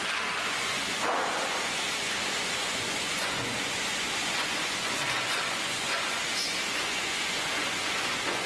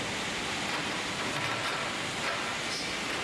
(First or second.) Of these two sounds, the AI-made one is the first